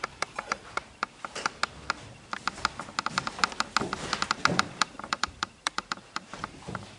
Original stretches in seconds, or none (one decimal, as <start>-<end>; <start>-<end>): 1.6-4.5